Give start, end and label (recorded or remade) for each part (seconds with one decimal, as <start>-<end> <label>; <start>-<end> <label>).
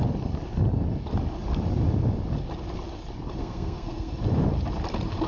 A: 0.0-3.4 recorded; 3.4-4.1 remade; 4.1-5.3 recorded